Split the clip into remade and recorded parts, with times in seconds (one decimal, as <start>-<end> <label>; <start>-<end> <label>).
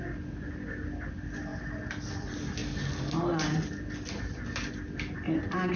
0.0-5.8 recorded